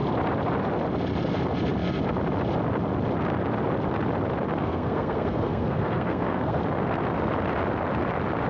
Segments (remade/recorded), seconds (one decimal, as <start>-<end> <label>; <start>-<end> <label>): 0.0-4.6 recorded; 4.6-6.6 remade; 6.6-8.5 recorded